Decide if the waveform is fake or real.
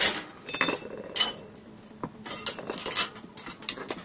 real